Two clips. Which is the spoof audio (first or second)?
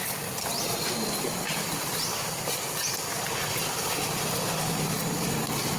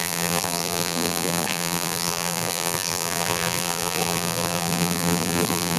second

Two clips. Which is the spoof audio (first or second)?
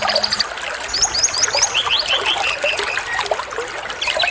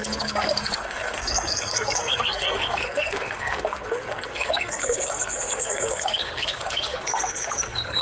second